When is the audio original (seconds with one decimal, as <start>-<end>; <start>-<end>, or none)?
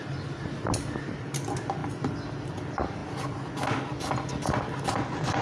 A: 0.0-5.4